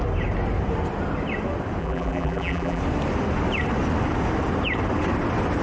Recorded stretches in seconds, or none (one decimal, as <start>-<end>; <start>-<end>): 0.0-1.8; 2.8-5.6

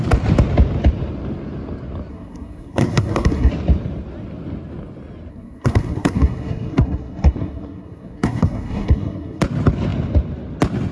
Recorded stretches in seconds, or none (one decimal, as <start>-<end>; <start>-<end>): 0.0-2.1; 3.5-5.3; 9.4-10.9

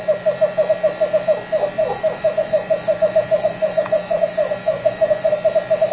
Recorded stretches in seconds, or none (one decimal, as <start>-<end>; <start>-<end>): 0.0-1.8; 5.3-5.9

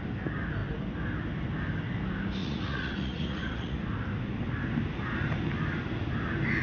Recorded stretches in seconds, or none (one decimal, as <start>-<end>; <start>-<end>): 0.0-2.4; 3.8-6.6

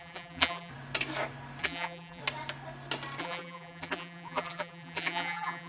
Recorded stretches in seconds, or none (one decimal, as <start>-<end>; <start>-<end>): 0.7-1.6; 2.2-3.2

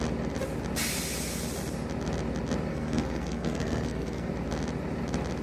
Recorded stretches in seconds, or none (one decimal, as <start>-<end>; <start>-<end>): 0.0-2.7; 4.3-5.4

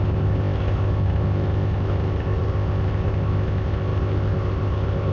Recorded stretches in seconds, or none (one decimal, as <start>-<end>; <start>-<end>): none